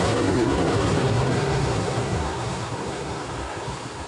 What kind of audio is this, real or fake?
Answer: fake